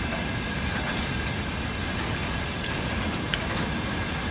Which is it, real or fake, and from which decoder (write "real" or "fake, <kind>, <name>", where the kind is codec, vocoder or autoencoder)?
real